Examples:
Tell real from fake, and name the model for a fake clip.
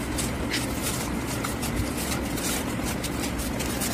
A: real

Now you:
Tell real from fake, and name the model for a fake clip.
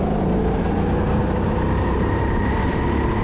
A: real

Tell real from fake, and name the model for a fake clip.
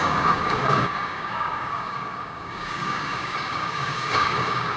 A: fake, codec, DAC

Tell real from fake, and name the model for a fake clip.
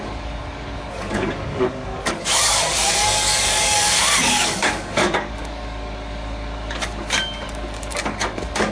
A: fake, codec, DAC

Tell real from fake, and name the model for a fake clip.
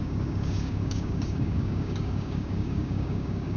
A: fake, codec, DAC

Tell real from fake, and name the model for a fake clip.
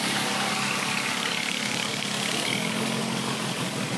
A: fake, codec, DAC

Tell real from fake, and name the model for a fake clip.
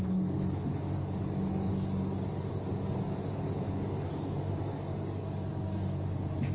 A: fake, codec, DAC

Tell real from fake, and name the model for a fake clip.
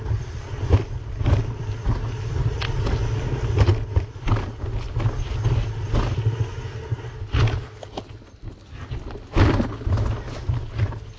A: real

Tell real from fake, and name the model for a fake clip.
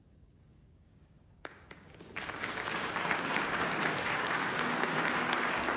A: fake, codec, DAC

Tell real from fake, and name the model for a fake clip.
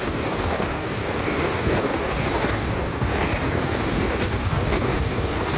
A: fake, codec, DAC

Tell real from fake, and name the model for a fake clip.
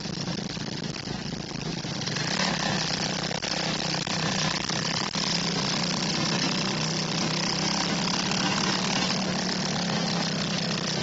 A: real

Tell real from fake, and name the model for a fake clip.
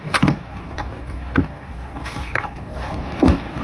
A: fake, codec, DAC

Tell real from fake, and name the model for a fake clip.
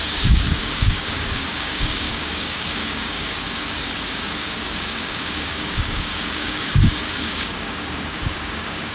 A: fake, codec, DAC